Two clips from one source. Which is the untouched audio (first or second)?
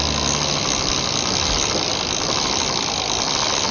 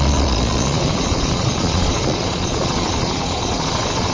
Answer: first